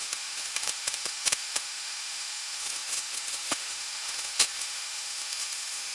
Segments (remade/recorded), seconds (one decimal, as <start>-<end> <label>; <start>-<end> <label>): 0.0-5.9 remade

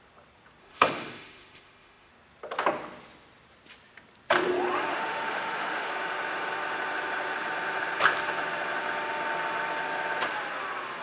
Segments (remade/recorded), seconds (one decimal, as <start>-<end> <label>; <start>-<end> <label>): 0.0-0.6 recorded; 0.6-2.1 remade; 2.1-4.9 recorded; 4.9-5.9 remade; 5.9-11.0 recorded

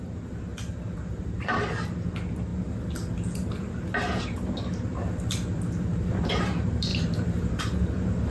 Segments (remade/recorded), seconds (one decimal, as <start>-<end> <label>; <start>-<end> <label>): 0.0-0.5 remade; 0.5-1.2 recorded; 1.2-2.5 remade; 2.5-4.2 recorded; 4.2-8.3 remade

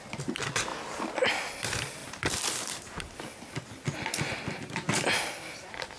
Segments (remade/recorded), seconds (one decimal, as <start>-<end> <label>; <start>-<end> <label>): 0.0-6.0 recorded